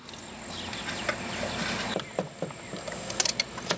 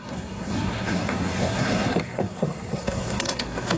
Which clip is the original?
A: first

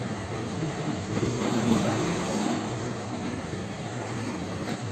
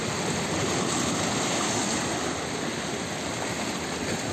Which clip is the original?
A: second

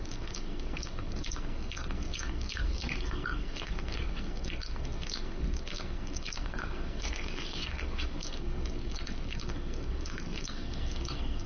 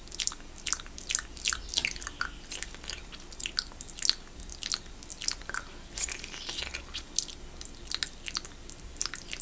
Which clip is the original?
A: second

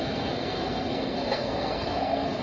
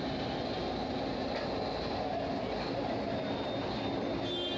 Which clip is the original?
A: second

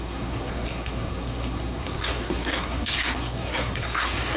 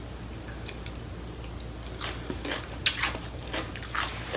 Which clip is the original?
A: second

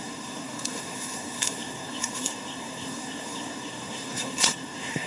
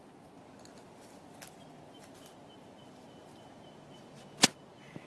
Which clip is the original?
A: second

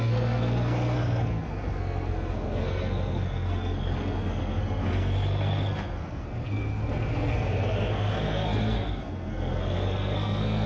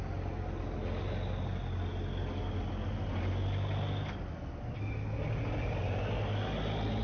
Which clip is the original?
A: second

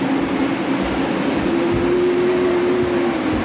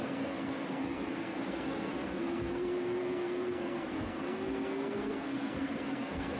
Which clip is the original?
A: first